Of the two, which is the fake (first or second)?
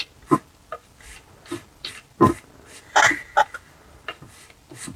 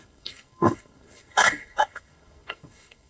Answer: second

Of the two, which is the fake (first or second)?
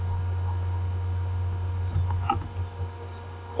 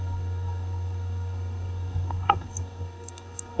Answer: second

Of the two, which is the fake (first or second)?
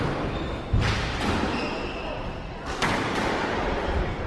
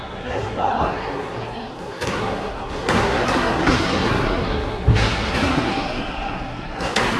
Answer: second